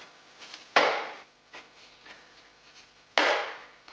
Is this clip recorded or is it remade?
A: recorded